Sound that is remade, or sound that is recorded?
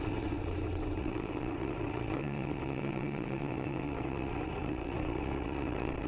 remade